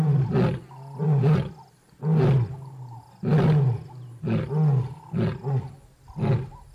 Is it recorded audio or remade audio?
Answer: recorded